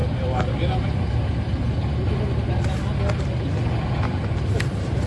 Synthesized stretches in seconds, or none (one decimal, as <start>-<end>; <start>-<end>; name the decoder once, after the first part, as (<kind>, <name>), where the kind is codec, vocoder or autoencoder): 0.5-1.8 (vocoder, BigVGAN v2); 4.1-5.1